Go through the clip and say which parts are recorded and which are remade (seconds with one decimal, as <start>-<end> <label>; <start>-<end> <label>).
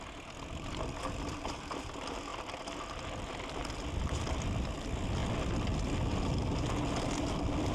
0.0-5.2 remade; 5.2-7.1 recorded; 7.1-7.7 remade